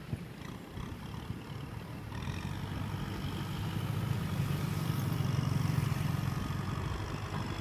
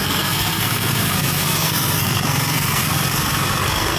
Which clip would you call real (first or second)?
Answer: first